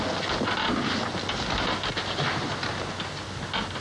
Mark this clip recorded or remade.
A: recorded